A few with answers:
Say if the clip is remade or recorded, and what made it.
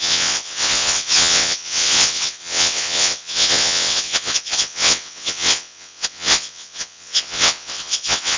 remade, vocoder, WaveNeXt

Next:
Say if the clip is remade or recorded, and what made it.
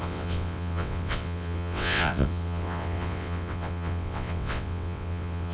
remade, vocoder, WaveNeXt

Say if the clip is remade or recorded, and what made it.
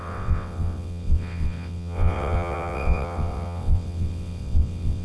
remade, vocoder, WaveNeXt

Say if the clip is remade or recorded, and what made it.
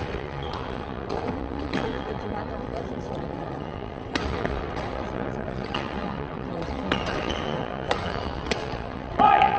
remade, vocoder, WaveNeXt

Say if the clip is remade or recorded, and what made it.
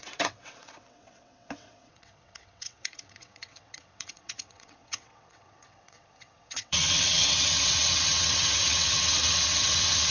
remade, vocoder, WaveNeXt